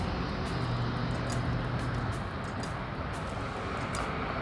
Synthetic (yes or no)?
no